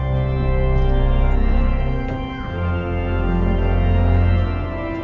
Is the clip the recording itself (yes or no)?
yes